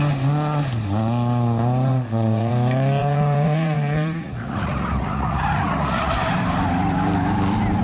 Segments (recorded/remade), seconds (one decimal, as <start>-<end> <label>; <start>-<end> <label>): 0.0-1.9 recorded; 1.9-2.5 remade; 2.5-3.0 recorded; 3.0-6.1 remade; 6.1-7.8 recorded